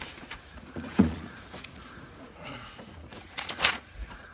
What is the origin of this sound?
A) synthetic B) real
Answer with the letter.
A